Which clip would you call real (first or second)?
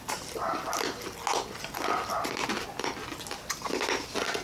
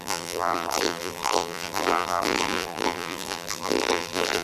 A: first